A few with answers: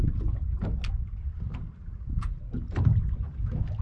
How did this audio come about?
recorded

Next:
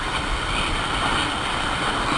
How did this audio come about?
recorded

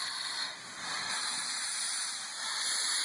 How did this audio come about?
recorded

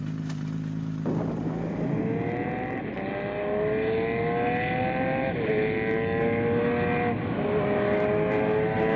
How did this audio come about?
recorded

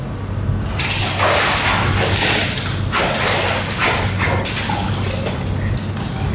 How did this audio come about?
recorded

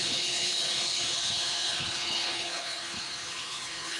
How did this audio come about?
remade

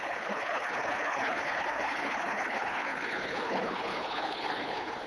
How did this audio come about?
remade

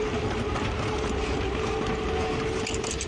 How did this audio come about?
recorded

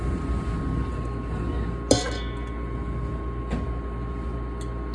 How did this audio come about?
recorded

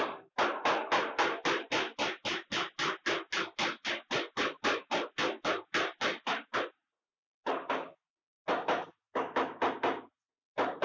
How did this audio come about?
recorded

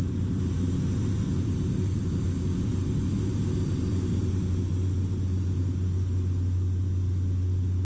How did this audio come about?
recorded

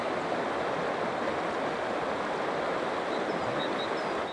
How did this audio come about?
recorded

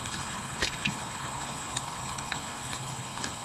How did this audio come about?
remade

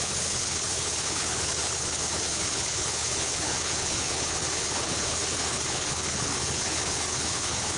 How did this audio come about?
remade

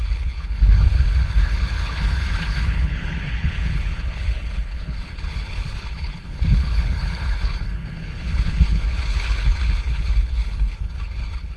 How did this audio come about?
remade